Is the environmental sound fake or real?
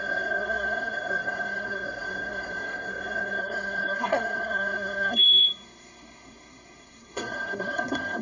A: fake